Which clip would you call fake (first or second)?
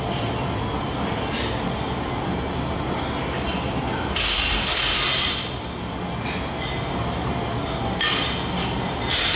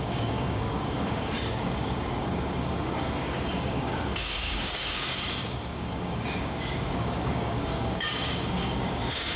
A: second